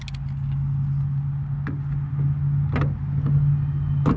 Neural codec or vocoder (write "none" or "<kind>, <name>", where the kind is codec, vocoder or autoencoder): none